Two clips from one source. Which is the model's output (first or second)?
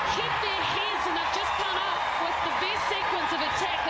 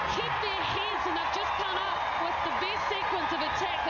first